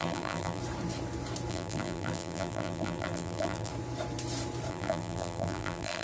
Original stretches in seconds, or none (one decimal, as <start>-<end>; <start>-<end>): 0.6-1.5; 3.7-4.7